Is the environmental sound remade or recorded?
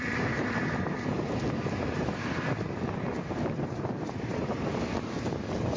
remade